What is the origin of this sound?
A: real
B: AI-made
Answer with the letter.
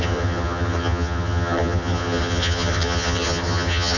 B